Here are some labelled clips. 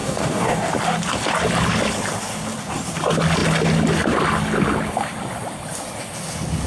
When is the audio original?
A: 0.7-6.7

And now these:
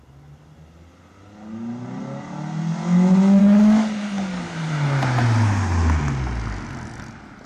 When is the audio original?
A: 0.0-3.4; 4.7-7.5

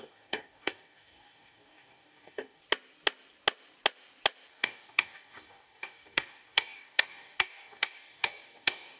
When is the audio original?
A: 2.6-4.5

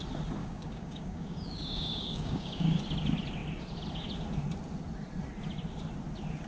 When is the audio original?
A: 0.0-0.4; 2.8-6.5

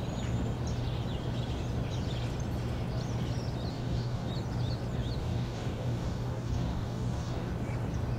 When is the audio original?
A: 0.0-3.7; 4.3-5.2; 7.5-8.2

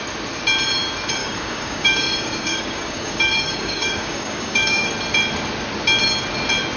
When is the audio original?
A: 0.0-1.2; 4.9-6.8